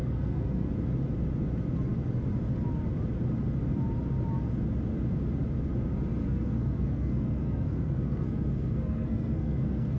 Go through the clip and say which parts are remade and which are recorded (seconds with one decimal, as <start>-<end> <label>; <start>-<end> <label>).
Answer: 0.0-0.7 remade; 0.7-6.2 recorded; 6.2-10.0 remade